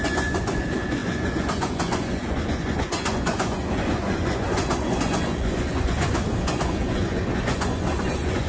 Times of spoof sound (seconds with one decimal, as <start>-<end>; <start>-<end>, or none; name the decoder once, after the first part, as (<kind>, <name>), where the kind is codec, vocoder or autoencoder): 0.0-8.5 (vocoder, Vocos)